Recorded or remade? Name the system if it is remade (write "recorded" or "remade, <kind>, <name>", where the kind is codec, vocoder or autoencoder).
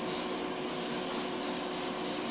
recorded